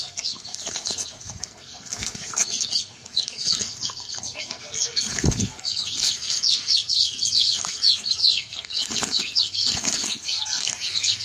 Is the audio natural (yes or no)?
no